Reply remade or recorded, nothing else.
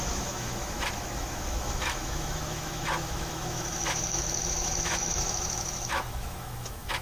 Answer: remade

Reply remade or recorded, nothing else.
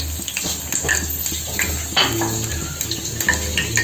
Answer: recorded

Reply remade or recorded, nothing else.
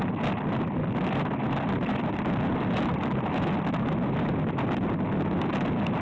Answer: recorded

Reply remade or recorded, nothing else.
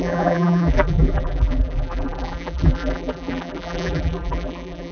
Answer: remade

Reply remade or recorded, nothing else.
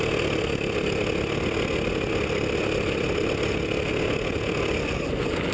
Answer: recorded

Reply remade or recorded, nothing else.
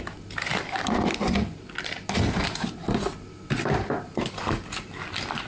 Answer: recorded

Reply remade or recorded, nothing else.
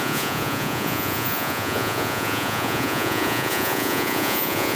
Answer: remade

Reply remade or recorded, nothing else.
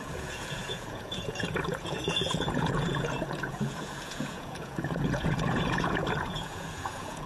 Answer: remade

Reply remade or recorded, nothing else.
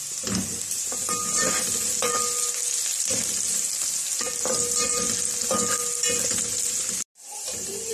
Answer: recorded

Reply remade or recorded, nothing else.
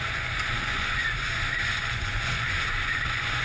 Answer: remade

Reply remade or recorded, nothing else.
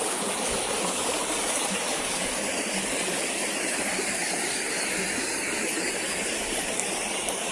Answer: remade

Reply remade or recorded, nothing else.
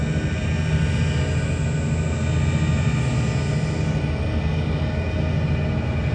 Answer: recorded